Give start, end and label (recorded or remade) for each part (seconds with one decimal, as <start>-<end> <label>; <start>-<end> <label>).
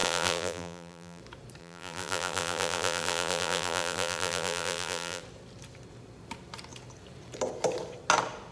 0.0-1.2 remade; 1.2-1.6 recorded; 1.6-5.2 remade; 5.2-8.5 recorded